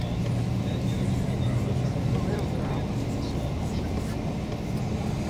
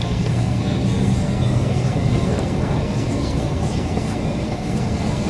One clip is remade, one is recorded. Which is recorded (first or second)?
first